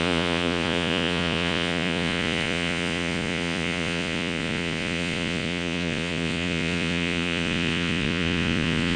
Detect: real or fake fake